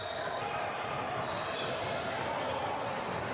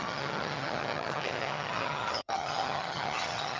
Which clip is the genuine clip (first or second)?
first